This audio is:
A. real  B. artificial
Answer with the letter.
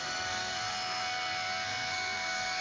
B